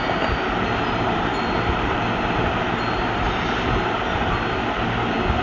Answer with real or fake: real